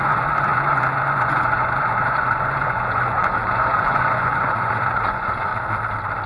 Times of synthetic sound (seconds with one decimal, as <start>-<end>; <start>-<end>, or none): 0.0-5.5